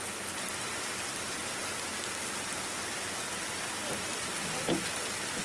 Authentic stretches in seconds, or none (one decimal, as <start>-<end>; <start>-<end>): 0.0-5.4